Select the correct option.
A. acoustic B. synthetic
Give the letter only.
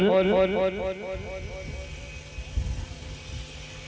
A